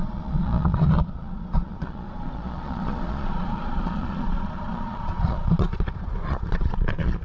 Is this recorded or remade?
remade